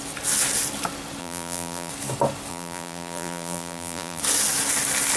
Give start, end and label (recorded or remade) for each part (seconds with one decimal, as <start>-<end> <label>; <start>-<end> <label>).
0.0-1.2 recorded; 1.2-1.9 remade; 1.9-2.5 recorded; 2.5-4.2 remade; 4.2-5.2 recorded